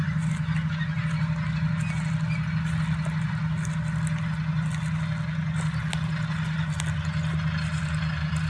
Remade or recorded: recorded